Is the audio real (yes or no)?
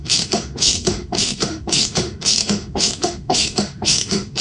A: no